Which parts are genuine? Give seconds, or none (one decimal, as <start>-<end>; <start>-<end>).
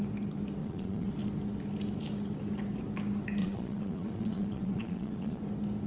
0.0-0.6; 1.1-3.4; 5.4-5.9